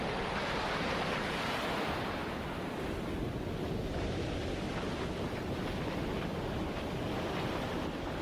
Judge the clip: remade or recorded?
recorded